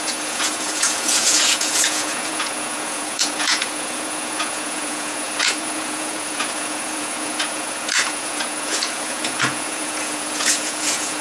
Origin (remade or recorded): remade